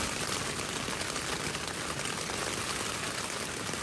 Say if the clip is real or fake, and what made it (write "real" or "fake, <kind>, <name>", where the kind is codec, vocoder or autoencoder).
real